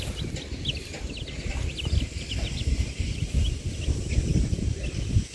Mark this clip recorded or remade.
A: recorded